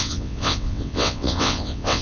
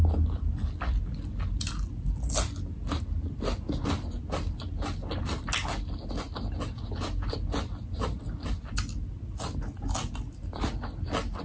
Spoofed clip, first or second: first